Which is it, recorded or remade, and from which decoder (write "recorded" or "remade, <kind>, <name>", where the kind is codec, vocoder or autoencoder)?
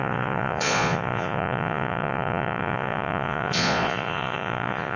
remade, vocoder, Vocos